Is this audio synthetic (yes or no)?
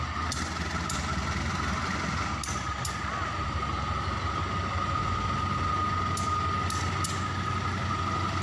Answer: no